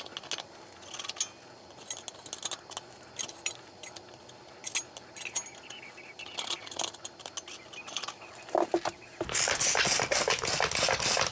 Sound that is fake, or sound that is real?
real